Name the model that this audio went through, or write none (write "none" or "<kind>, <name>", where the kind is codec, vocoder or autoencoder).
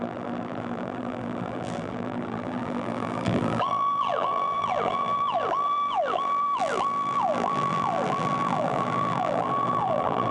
vocoder, BigVGAN v2